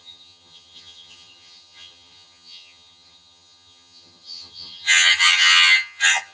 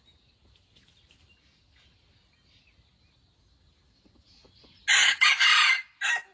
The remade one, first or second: first